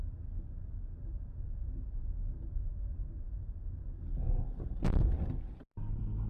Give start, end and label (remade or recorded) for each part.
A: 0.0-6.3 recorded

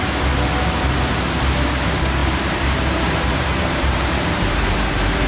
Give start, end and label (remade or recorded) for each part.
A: 0.0-2.2 recorded; 2.2-5.3 remade

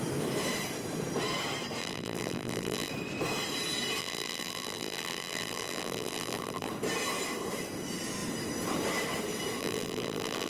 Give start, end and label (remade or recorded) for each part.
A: 0.0-1.8 recorded; 1.8-2.9 remade; 2.9-4.0 recorded; 4.0-6.7 remade; 6.7-9.6 recorded; 9.6-10.5 remade

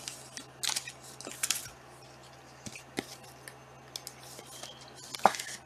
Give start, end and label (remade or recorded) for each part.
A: 0.0-5.7 recorded

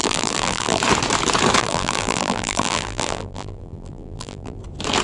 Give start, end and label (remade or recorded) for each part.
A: 0.0-0.8 remade; 0.8-1.6 recorded; 1.6-4.6 remade; 4.6-5.0 recorded